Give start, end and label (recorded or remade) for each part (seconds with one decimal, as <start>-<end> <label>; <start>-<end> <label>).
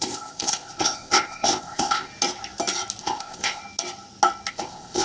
0.0-2.1 remade; 2.1-3.0 recorded; 3.0-3.6 remade; 3.6-4.5 recorded; 4.5-5.0 remade